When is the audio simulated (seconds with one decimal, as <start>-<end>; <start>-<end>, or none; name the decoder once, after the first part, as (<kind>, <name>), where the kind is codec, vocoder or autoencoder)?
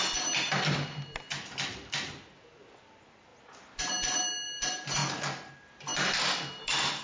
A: 0.0-7.0 (vocoder, BigVGAN v2)